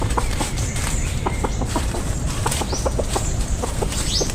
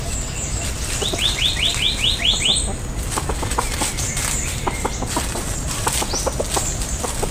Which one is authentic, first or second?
second